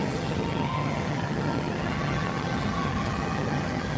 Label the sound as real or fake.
fake